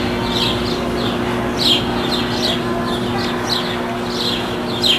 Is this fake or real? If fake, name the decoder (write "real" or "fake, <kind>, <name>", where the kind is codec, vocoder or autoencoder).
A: real